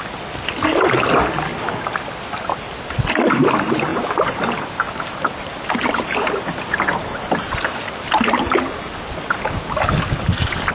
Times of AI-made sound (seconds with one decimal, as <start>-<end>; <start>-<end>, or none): none